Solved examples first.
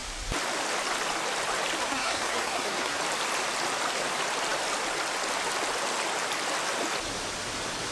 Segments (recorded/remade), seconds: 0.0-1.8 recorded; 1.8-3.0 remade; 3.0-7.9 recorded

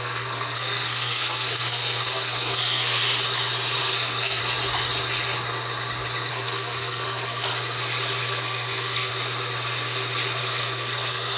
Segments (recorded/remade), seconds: 0.0-3.0 remade; 3.0-3.8 recorded; 3.8-4.4 remade; 4.4-6.3 recorded; 6.3-7.5 remade; 7.5-8.2 recorded; 8.2-9.1 remade; 9.1-10.4 recorded; 10.4-11.4 remade

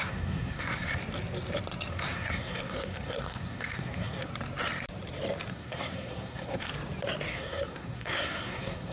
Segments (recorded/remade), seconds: 0.0-1.0 remade; 1.0-1.9 recorded; 1.9-4.3 remade; 4.3-5.5 recorded; 5.5-6.7 remade; 6.7-7.3 recorded; 7.3-8.9 remade